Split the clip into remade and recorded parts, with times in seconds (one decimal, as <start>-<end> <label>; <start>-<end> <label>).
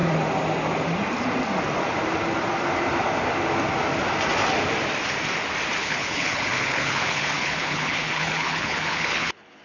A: 0.0-5.8 recorded; 5.8-9.6 remade